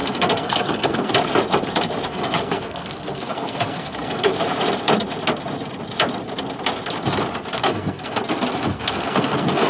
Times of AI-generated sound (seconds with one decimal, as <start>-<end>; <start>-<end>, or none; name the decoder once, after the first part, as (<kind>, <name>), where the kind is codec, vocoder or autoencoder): 0.0-1.1 (codec, SNAC); 2.1-4.3; 7.6-8.2; 8.7-9.7